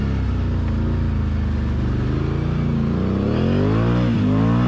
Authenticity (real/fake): real